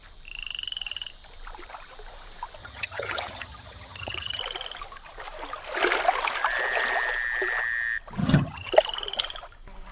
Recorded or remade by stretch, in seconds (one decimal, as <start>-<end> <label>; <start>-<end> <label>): 0.0-2.6 recorded; 2.6-4.4 remade; 4.4-8.2 recorded; 8.2-8.7 remade; 8.7-9.9 recorded